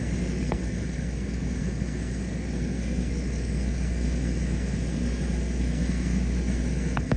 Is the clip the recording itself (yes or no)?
no